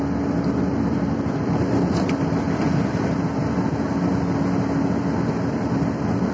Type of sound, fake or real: real